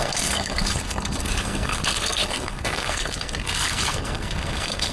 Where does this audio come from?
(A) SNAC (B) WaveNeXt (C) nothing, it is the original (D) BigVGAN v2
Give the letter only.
A